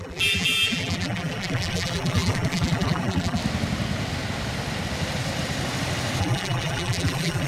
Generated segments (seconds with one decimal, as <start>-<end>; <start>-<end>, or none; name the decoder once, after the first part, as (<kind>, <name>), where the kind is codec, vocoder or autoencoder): 0.0-3.4 (vocoder, BigVGAN v2); 6.2-7.5